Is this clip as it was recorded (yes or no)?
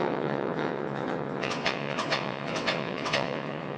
no